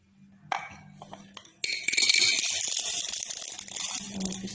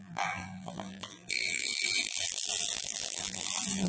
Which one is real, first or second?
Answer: first